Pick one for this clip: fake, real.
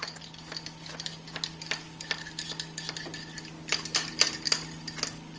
real